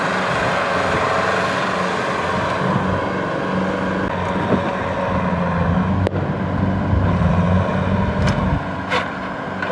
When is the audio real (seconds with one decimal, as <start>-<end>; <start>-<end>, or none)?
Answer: 0.0-9.7